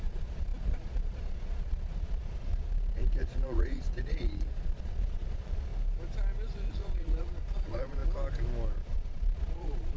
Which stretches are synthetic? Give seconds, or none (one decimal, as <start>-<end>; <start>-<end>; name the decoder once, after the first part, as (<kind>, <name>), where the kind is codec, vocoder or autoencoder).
0.0-5.7 (vocoder, Vocos); 6.7-8.0; 8.7-10.0